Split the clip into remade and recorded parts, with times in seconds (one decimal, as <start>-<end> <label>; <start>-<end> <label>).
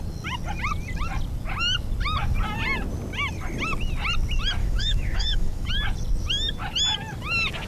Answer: 0.0-4.6 recorded; 4.6-5.7 remade; 5.7-7.7 recorded